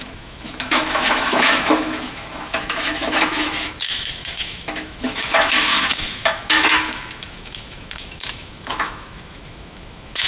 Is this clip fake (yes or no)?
yes